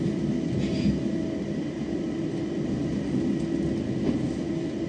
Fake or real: real